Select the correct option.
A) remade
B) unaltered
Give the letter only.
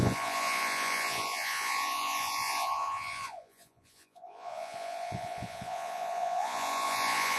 A